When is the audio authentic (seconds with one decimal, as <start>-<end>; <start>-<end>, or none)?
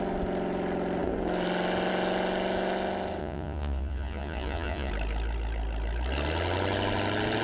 0.0-3.2; 4.9-7.4